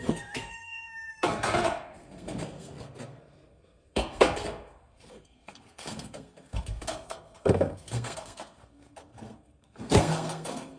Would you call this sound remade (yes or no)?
yes